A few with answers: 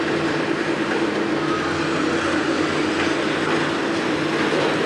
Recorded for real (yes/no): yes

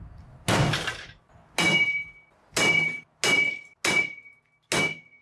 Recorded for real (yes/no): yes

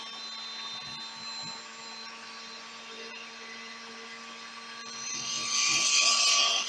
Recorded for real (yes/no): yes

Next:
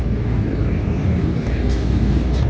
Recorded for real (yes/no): no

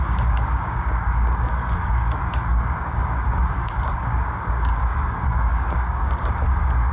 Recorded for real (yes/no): no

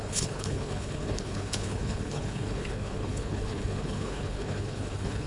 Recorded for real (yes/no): no